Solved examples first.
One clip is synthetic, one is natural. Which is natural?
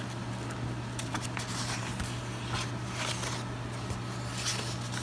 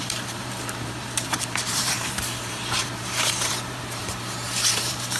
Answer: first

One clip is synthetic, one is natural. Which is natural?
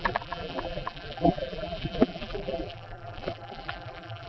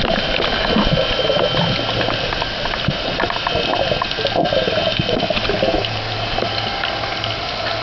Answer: second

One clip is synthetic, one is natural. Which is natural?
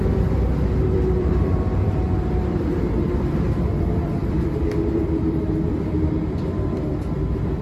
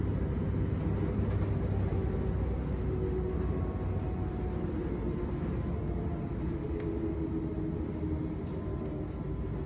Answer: second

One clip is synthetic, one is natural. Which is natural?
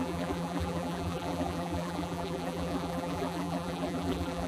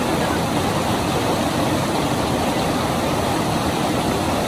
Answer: second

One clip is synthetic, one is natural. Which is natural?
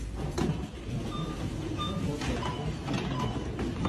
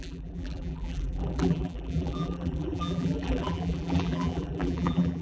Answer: first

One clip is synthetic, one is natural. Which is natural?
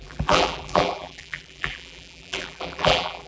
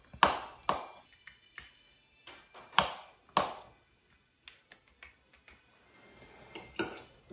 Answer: second